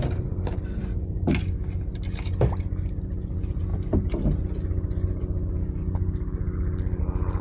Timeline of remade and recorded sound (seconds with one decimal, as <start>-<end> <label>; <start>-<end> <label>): 0.0-7.4 recorded